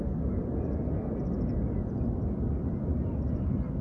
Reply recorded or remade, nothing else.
recorded